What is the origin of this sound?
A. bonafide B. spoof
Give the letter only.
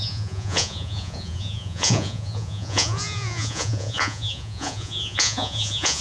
B